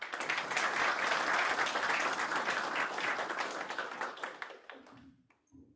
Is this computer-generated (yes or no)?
no